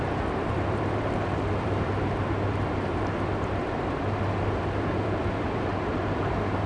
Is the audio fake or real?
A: fake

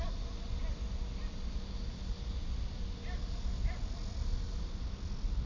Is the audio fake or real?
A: real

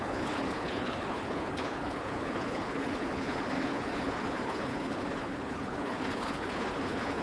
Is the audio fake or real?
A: fake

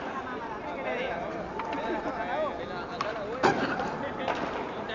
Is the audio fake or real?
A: real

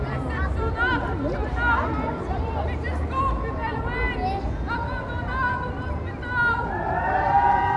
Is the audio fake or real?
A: real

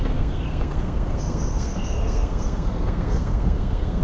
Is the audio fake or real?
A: fake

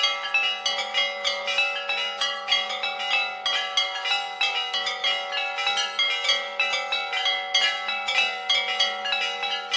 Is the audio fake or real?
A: real